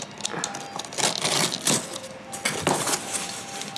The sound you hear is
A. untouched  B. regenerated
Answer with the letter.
A